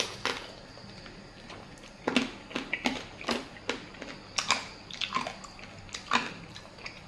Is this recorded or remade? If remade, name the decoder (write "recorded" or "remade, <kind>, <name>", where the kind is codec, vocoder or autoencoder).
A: recorded